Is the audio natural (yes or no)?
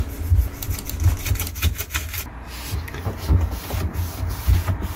yes